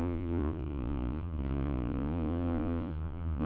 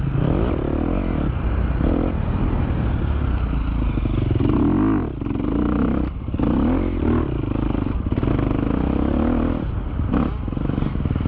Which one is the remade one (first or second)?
first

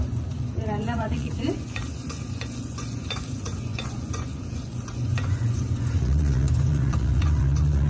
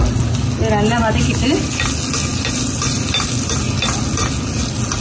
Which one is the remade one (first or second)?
first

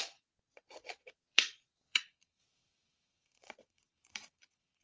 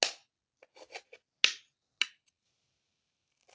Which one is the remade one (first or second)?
first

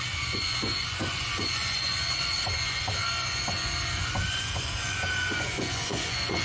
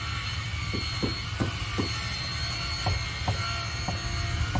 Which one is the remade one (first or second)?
first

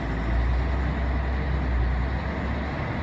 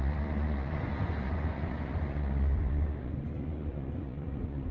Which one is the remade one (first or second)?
second